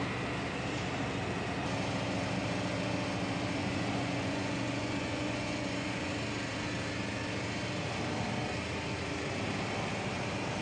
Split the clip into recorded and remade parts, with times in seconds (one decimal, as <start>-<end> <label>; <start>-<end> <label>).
0.0-3.6 recorded; 3.6-6.1 remade; 6.1-10.6 recorded